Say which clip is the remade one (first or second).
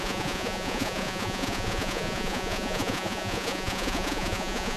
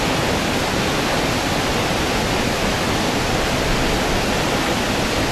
first